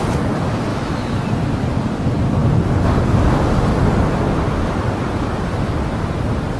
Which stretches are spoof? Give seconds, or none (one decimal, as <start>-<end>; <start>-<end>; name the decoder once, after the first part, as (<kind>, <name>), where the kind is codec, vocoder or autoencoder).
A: 0.7-1.2 (autoencoder, DAC-VAE)